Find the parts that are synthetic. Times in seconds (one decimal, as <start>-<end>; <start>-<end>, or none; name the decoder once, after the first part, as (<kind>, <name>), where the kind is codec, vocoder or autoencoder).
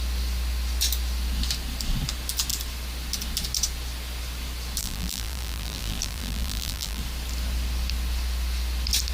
4.8-7.0 (vocoder, BigVGAN v2)